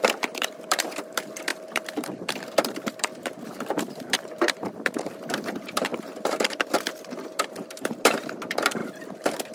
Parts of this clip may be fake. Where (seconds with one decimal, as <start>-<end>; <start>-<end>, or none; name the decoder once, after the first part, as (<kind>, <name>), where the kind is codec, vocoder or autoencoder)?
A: 0.0-9.5 (vocoder, BigVGAN v2)